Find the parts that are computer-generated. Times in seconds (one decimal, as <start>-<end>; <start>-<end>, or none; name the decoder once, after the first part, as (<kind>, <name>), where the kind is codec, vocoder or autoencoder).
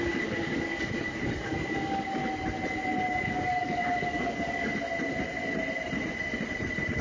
0.0-2.2 (codec, DAC); 3.1-4.7